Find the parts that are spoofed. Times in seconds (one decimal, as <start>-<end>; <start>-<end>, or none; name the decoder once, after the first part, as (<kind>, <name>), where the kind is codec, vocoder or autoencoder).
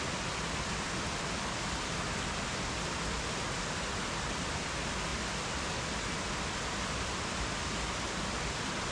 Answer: none